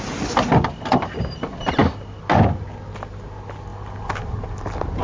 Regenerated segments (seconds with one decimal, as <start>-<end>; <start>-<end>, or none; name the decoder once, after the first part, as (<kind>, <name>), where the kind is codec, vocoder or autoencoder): none